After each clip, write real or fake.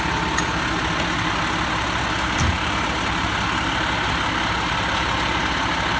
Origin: real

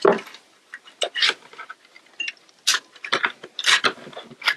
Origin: real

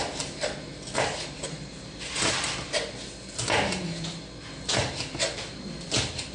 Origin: real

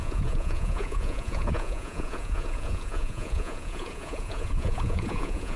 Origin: fake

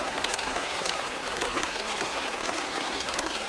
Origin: fake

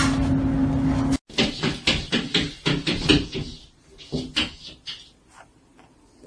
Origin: real